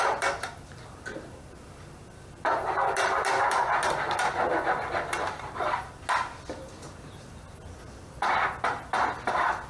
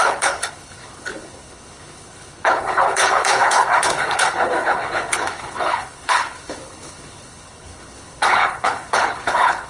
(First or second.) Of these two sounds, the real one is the first